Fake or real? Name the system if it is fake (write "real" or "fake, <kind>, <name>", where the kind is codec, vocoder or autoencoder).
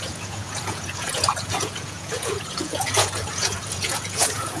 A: fake, vocoder, Vocos